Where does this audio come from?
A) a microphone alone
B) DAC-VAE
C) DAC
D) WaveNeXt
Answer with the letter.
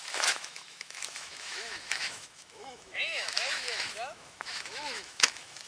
B